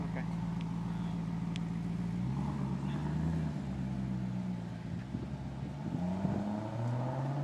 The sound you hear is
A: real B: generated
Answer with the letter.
A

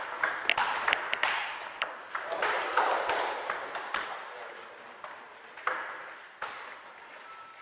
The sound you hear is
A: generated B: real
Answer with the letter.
B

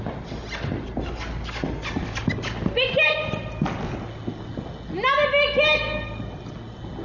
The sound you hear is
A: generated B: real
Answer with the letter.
B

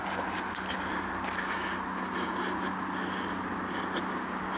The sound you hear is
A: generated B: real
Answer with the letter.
B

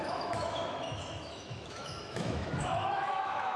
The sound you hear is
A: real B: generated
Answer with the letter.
B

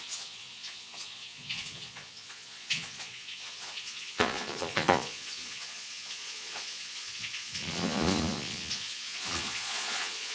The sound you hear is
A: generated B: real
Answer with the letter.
A